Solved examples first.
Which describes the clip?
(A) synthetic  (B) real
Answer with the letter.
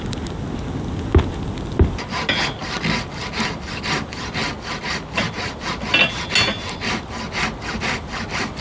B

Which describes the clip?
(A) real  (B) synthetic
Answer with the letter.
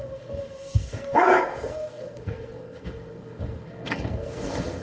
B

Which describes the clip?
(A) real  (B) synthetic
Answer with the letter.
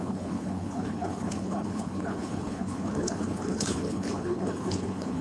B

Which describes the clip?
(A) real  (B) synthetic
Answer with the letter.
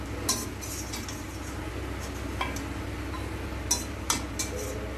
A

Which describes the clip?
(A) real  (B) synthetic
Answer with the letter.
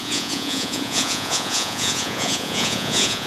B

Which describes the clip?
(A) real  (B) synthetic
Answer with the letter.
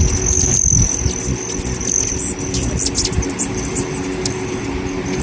A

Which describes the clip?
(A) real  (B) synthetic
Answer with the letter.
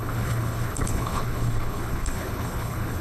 B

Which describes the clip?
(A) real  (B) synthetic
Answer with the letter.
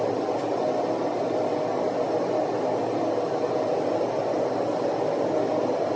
A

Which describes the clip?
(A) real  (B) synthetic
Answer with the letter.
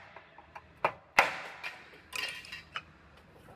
A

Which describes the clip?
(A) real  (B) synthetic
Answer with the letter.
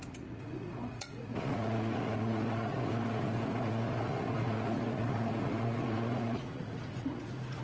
B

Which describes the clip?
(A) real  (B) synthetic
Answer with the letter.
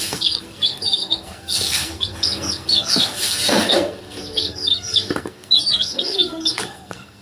B